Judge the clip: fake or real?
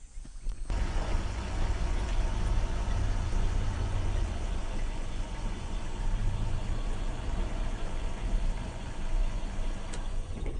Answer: fake